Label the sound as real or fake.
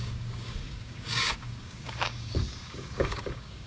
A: fake